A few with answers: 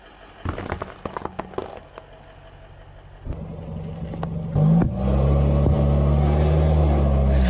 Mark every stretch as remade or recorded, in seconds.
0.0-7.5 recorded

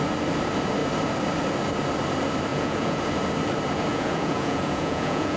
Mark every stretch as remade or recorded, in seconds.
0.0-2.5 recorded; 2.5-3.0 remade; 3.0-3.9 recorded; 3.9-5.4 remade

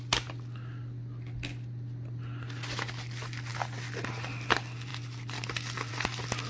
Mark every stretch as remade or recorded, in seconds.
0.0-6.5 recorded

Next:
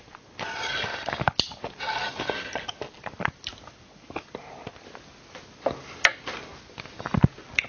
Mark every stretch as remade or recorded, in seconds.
0.0-7.7 recorded